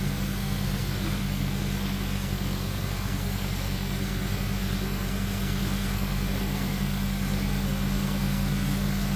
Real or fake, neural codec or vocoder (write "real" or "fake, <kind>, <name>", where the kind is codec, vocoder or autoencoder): fake, codec, SNAC